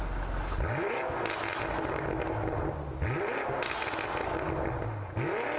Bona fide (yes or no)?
yes